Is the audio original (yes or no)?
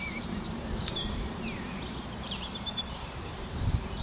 no